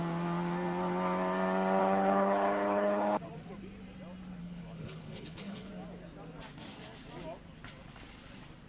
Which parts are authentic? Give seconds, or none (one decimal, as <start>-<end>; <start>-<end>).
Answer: 0.0-1.8; 3.2-4.4; 5.7-8.7